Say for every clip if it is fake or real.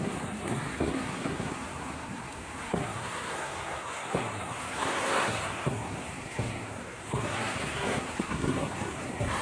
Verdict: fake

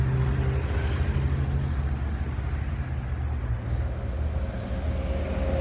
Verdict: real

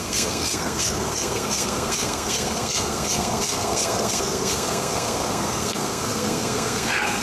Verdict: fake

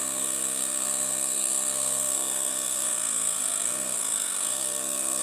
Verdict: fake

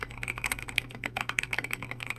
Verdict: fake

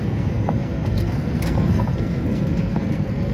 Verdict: fake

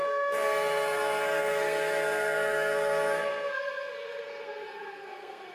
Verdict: fake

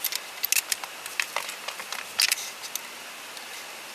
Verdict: real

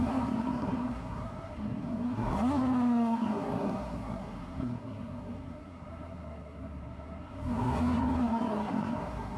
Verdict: fake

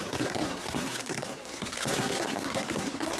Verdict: fake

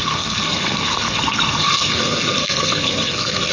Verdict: fake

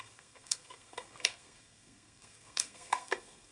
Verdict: fake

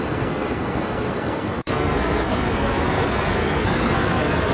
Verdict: fake